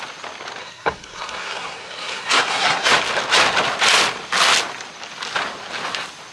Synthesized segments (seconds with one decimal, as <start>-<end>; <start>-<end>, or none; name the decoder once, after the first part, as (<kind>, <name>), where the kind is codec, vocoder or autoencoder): 0.6-2.9 (codec, SNAC)